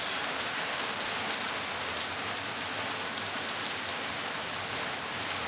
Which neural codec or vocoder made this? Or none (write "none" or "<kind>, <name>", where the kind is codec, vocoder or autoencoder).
none